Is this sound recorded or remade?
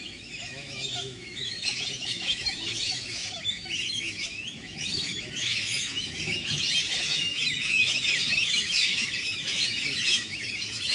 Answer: remade